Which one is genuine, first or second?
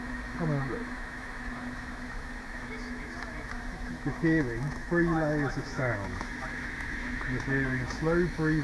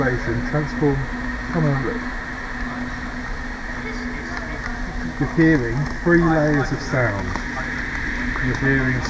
second